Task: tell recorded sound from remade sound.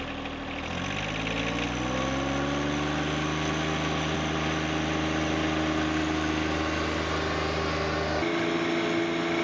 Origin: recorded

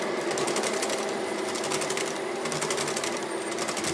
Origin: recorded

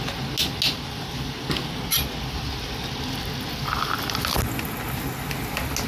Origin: recorded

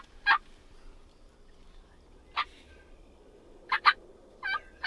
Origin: recorded